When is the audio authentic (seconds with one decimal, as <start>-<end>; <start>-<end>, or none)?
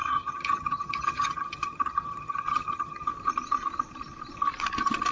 3.1-5.1